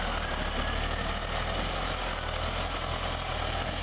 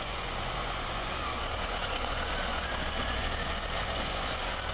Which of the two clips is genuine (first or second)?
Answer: first